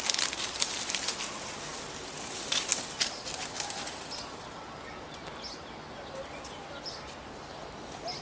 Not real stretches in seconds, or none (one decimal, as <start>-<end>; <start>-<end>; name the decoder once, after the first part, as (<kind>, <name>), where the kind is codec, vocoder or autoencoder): none